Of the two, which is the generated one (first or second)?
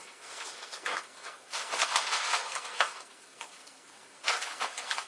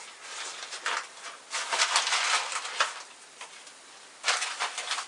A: first